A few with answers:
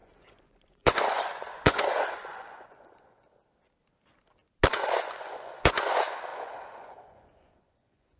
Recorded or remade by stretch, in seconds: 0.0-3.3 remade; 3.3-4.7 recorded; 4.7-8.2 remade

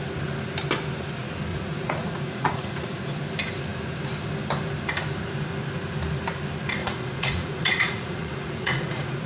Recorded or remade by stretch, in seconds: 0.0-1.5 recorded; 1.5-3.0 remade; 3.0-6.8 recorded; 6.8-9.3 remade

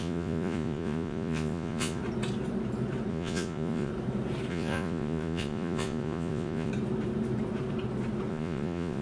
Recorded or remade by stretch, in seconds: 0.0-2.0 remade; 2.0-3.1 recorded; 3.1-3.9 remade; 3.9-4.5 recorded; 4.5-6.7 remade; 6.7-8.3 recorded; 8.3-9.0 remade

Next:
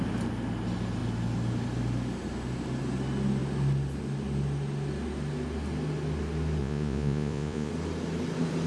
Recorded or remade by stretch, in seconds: 0.0-6.6 recorded; 6.6-7.7 remade; 7.7-8.7 recorded